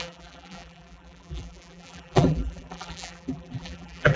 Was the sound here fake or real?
fake